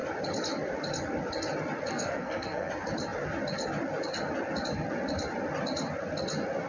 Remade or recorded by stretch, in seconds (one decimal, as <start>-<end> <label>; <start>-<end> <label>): 0.0-1.9 recorded; 1.9-2.7 remade; 2.7-6.7 recorded